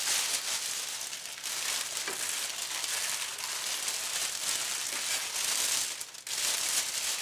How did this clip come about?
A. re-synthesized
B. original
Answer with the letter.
B